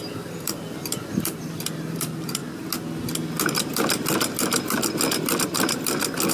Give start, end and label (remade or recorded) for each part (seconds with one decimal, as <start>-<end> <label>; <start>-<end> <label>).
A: 0.0-2.4 remade; 2.4-6.3 recorded